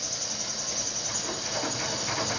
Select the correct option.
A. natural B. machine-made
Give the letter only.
A